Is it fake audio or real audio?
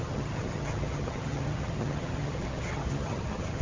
fake